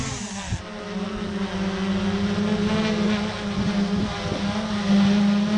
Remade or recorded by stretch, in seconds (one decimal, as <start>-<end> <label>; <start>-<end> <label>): 0.0-5.6 recorded